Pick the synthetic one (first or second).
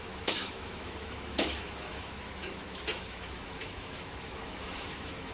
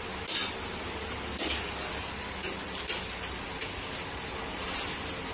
first